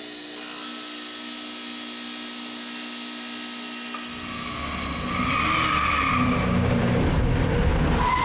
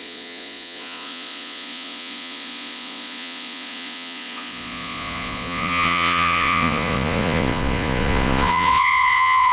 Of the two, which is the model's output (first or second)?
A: second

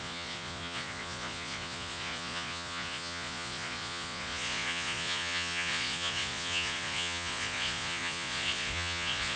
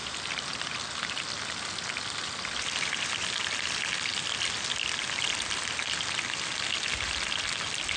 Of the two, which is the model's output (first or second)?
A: first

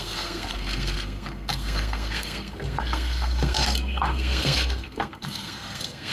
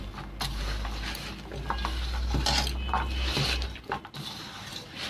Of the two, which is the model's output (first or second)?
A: first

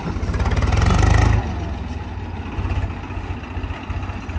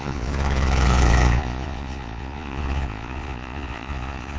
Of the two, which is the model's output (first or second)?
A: second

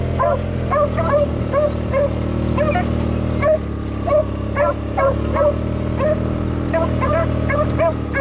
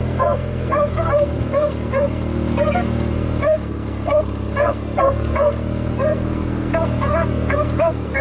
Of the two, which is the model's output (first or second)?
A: second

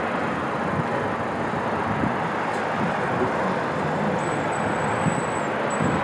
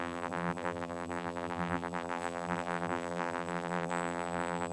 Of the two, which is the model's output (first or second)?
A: second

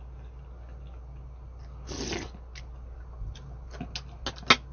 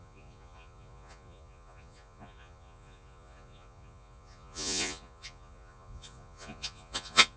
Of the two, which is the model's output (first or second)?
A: second